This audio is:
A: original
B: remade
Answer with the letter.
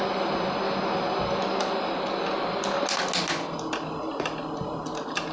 A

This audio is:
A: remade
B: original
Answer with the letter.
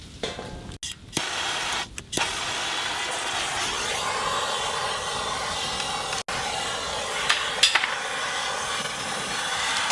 B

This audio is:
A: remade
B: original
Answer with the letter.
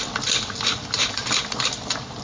B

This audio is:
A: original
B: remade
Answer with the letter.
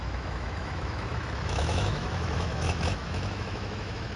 B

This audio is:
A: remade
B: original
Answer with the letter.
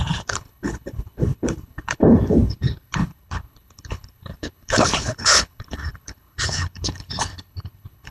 A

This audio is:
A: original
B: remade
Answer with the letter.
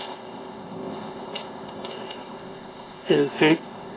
B